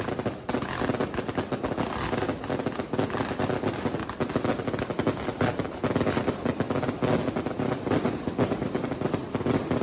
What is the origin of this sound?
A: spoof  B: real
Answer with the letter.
B